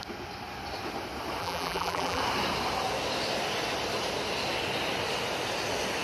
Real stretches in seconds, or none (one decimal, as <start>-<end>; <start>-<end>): 0.0-1.4; 2.2-6.0